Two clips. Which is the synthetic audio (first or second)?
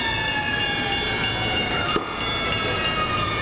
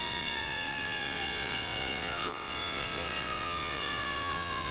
second